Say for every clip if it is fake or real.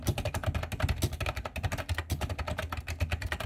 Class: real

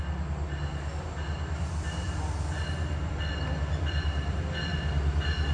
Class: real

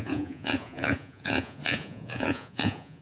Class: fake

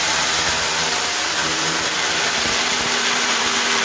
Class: fake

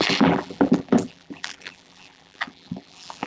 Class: fake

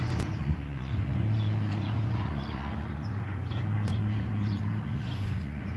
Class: fake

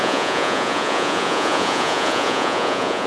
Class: fake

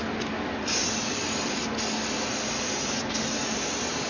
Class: real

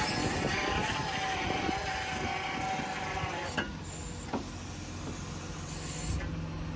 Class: real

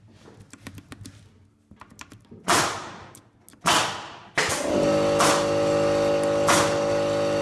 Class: real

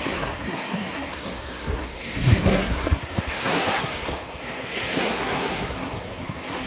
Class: fake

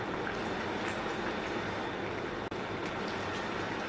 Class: real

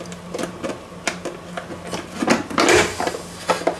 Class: real